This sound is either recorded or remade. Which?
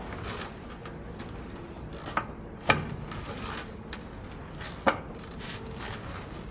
recorded